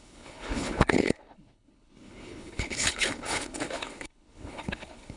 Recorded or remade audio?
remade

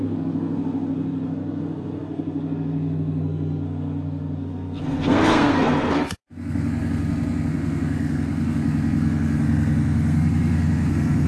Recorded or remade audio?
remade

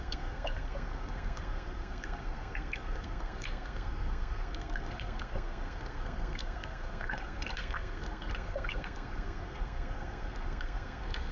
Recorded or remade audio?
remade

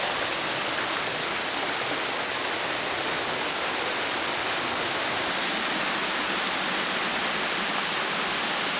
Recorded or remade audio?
recorded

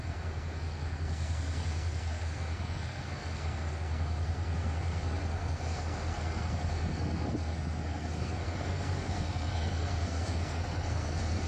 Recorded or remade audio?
remade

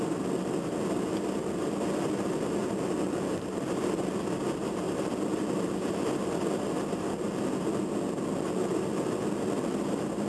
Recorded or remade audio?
recorded